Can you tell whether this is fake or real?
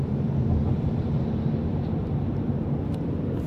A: real